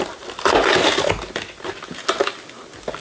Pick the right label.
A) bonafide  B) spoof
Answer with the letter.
A